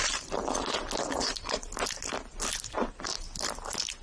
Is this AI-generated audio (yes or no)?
no